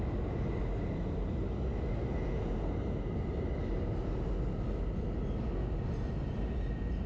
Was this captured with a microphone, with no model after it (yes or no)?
yes